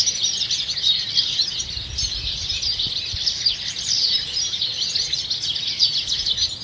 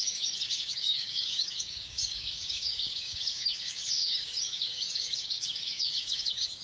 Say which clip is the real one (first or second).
first